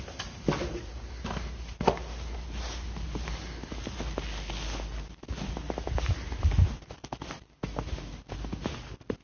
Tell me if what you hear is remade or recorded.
recorded